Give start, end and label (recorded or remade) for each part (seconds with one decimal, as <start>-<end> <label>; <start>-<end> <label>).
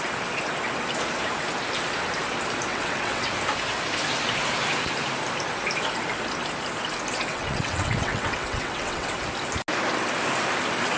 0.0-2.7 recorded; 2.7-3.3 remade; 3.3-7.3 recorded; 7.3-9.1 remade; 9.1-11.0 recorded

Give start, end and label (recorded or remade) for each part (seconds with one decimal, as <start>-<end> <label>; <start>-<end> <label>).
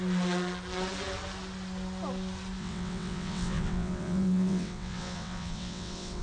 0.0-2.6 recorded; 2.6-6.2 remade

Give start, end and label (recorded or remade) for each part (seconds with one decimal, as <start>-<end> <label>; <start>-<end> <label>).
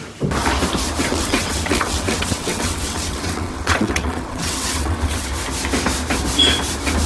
0.0-1.1 recorded; 1.1-5.3 remade; 5.3-7.1 recorded